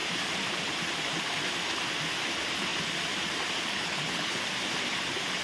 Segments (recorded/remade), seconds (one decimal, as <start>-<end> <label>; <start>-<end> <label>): 0.0-3.8 recorded; 3.8-4.4 remade; 4.4-5.4 recorded